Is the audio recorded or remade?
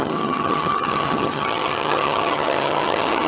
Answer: remade